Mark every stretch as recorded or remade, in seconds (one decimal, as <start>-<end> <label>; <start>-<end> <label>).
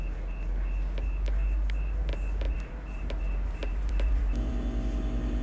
0.0-2.1 recorded; 2.1-3.2 remade; 3.2-3.6 recorded; 3.6-4.5 remade; 4.5-5.4 recorded